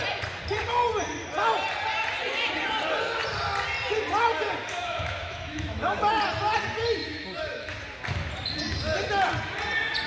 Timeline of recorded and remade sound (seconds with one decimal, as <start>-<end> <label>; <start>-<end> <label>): 0.0-4.6 recorded; 4.6-6.0 remade; 6.0-7.0 recorded; 7.0-7.7 remade; 7.7-10.1 recorded